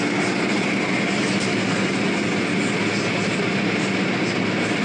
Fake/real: real